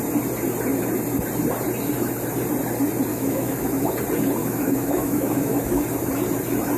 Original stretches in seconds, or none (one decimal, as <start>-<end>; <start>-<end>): 0.0-3.1; 3.9-4.4; 5.8-6.8